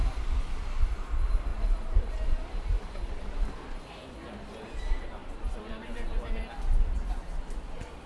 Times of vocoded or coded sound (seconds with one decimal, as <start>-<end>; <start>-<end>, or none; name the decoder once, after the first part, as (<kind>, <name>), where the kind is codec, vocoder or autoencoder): 0.0-0.5 (vocoder, BigVGAN v2); 1.5-3.1; 5.2-6.9